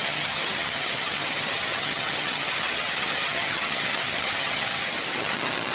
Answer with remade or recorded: remade